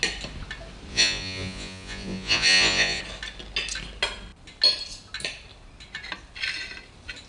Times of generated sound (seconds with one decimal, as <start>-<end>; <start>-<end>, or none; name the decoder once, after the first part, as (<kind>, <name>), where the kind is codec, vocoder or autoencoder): 0.9-3.0 (vocoder, Vocos)